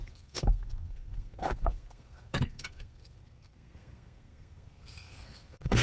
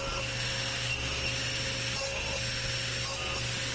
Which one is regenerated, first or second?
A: first